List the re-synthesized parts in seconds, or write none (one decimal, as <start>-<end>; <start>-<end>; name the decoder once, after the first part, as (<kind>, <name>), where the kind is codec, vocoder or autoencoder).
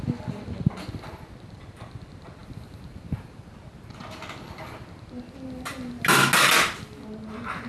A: none